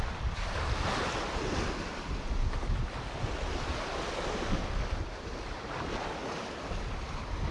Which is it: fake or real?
real